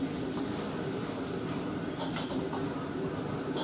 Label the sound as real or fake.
real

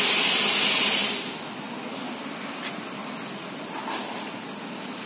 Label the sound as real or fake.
real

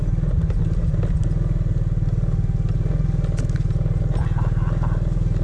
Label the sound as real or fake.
real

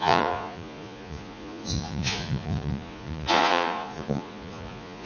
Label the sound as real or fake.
fake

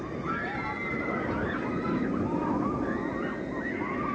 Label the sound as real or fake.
real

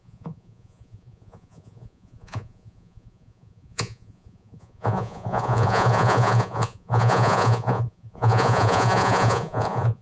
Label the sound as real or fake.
fake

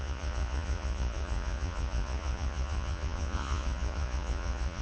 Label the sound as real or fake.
fake